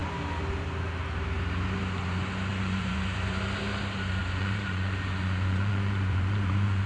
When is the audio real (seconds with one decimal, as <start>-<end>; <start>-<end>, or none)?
0.0-2.5; 3.4-4.2